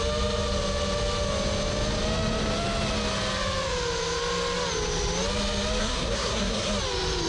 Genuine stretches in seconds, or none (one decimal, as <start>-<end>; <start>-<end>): 0.0-5.8; 6.7-7.3